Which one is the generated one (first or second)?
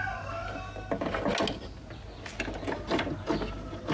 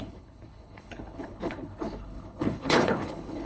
second